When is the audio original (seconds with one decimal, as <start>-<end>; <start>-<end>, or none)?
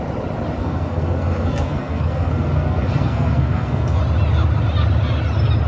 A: 0.0-0.6; 4.0-5.7